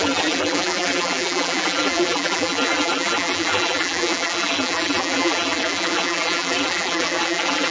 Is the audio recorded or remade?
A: remade